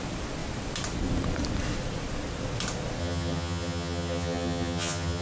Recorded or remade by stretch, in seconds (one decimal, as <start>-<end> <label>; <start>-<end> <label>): 0.0-3.0 recorded; 3.0-5.2 remade